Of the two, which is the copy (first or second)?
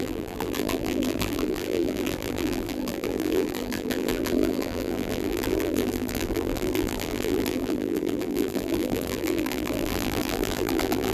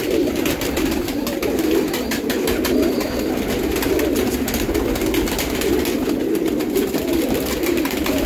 first